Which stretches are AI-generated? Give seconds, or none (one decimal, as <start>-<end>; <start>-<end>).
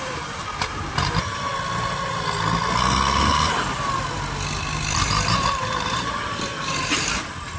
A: 0.0-1.5; 5.0-7.6